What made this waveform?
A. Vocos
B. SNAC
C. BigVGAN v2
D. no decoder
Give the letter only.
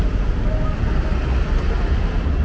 D